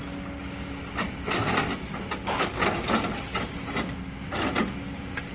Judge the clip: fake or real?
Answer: real